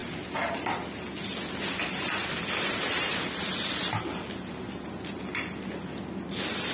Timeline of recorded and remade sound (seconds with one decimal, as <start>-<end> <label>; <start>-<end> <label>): 0.0-6.7 recorded